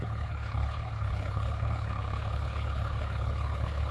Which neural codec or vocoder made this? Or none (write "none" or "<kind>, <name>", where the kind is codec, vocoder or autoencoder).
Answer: codec, HILCodec